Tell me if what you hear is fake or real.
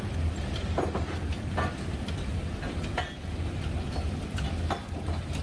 real